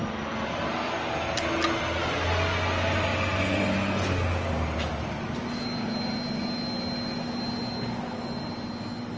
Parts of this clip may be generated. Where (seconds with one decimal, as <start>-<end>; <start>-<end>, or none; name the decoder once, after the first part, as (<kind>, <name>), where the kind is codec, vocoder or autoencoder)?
none